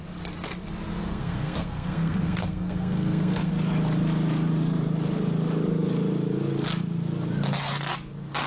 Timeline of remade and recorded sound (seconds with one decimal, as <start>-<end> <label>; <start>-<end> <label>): 0.0-1.0 recorded; 1.0-3.5 remade; 3.5-8.5 recorded